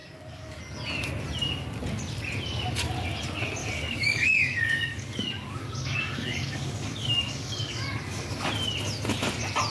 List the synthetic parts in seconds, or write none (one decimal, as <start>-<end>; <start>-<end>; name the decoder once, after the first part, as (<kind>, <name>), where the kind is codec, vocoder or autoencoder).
0.0-0.6 (codec, DAC); 3.6-8.5